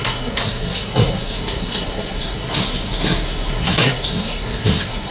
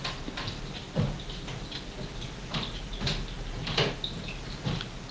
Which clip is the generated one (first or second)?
first